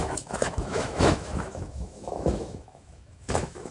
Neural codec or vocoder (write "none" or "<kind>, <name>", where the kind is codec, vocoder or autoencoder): autoencoder, DAC-VAE